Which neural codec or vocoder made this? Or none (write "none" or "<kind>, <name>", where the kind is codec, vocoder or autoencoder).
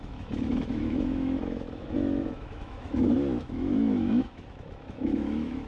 autoencoder, DAC-VAE